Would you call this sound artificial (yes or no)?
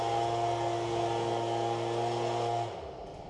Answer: no